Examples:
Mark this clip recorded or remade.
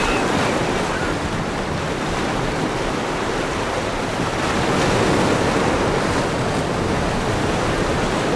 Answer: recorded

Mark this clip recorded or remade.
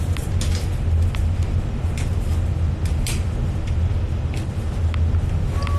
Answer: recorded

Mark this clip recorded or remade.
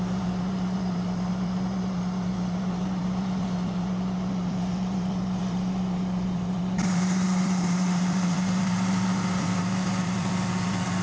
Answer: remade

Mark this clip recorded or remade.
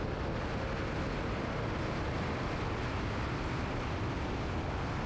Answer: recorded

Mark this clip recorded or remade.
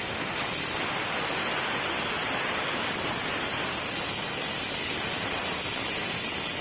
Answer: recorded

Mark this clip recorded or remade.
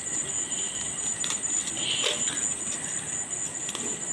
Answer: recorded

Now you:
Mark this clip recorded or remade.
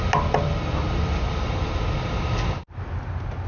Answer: recorded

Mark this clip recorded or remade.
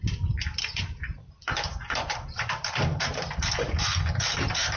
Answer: remade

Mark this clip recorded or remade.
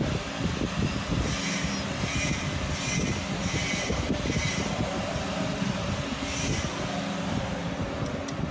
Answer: recorded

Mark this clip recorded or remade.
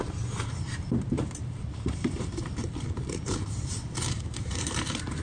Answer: remade